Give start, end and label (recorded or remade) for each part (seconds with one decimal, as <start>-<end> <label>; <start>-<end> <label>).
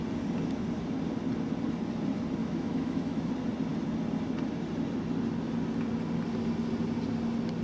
0.0-2.4 recorded; 2.4-3.3 remade; 3.3-7.6 recorded